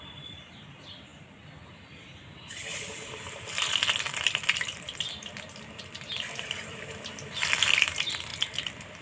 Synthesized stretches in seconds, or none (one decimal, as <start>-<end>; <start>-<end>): 0.0-8.3